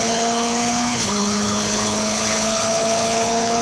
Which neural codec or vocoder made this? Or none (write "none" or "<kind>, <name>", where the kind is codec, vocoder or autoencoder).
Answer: codec, HILCodec